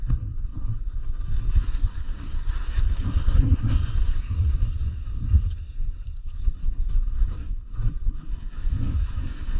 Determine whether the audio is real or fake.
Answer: fake